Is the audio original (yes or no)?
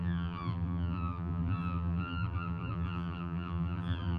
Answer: no